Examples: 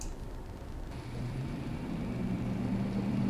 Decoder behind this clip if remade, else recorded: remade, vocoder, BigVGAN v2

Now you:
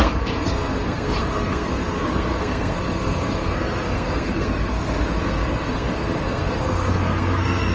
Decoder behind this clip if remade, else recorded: remade, codec, SNAC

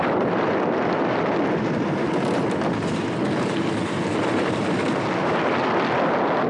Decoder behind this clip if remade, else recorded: recorded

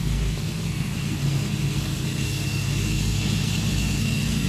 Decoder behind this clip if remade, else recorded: remade, codec, SNAC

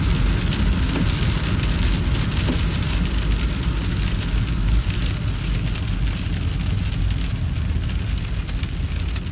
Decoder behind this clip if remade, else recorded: recorded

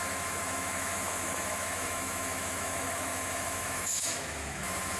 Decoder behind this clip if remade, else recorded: remade, autoencoder, DAC-VAE